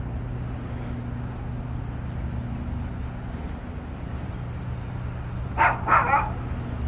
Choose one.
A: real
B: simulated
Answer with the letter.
A